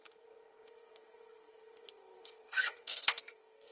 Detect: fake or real fake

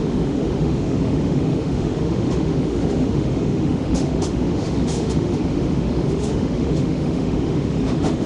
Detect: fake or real fake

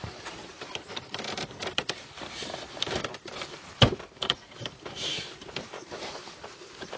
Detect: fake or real fake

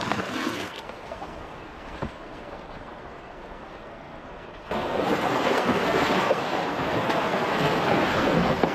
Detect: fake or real fake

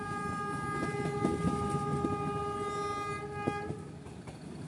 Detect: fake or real real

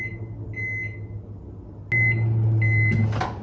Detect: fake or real real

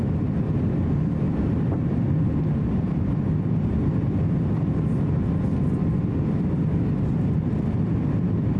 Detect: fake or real real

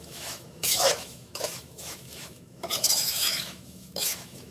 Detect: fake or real fake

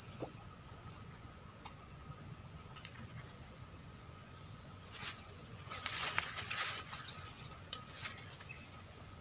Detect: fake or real fake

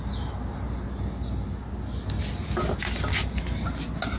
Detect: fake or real real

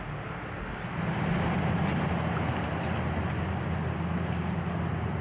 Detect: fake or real real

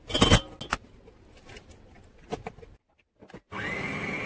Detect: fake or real real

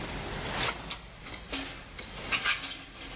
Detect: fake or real real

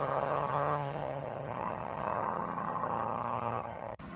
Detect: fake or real fake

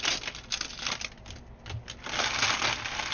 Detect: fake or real real